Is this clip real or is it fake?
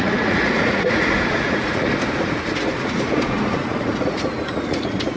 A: fake